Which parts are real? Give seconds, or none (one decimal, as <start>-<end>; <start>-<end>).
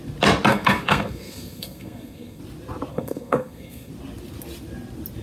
0.0-0.5; 2.4-2.9; 3.9-5.2